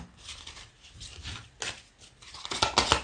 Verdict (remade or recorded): recorded